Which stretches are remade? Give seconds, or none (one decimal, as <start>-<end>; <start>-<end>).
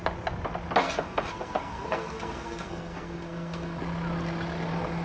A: 0.8-3.8